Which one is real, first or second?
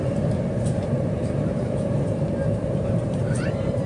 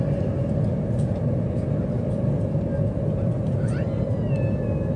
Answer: second